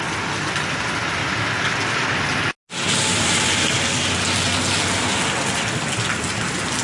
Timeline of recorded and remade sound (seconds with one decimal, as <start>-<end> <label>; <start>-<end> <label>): 0.0-6.8 recorded